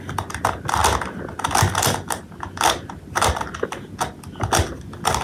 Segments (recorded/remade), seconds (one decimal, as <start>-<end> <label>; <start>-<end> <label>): 0.0-5.2 recorded

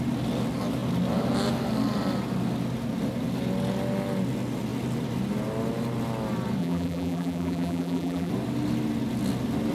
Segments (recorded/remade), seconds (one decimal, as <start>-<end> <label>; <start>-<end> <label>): 0.0-6.6 recorded; 6.6-8.3 remade; 8.3-9.7 recorded

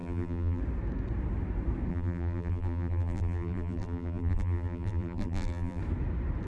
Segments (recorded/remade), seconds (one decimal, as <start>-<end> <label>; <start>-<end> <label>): 0.0-0.6 remade; 0.6-1.9 recorded; 1.9-5.8 remade; 5.8-6.5 recorded

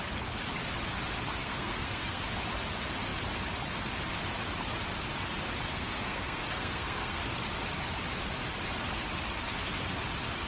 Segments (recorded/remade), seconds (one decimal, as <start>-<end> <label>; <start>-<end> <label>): 0.0-1.4 recorded; 1.4-2.2 remade; 2.2-5.7 recorded; 5.7-7.2 remade; 7.2-10.5 recorded

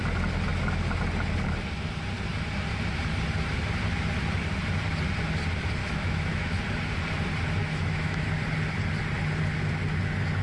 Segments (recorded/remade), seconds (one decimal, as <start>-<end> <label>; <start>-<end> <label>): 0.0-5.8 recorded; 5.8-6.6 remade; 6.6-7.6 recorded; 7.6-8.3 remade; 8.3-10.4 recorded

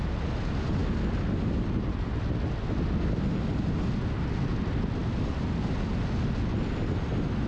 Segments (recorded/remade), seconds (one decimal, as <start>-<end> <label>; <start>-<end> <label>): 0.0-7.5 recorded

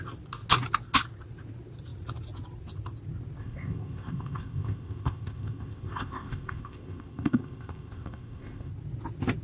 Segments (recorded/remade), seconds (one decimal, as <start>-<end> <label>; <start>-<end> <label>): 0.0-3.4 recorded; 3.4-8.7 remade; 8.7-9.4 recorded

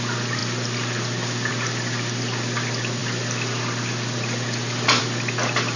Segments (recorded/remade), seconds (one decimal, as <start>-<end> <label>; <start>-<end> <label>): 0.0-5.8 recorded